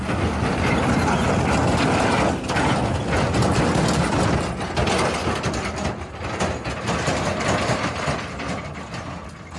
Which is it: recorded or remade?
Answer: recorded